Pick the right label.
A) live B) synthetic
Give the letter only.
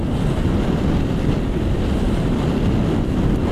A